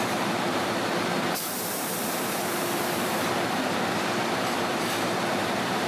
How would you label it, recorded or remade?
remade